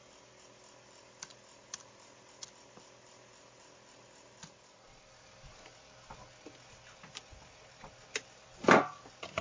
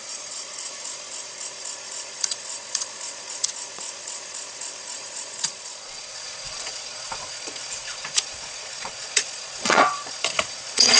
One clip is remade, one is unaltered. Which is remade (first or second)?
second